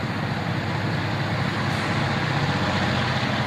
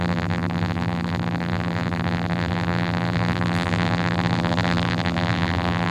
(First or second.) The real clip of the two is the first